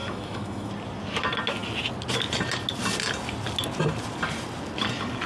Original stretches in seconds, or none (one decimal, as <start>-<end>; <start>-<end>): 0.7-5.3